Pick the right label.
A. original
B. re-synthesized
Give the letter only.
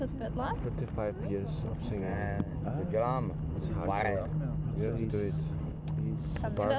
A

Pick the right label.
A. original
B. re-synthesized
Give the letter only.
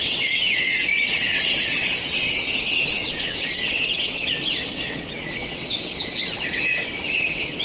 B